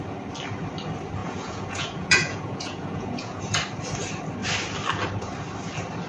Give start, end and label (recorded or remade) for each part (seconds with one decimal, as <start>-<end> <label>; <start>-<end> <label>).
0.0-1.2 recorded; 1.2-3.4 remade; 3.4-6.1 recorded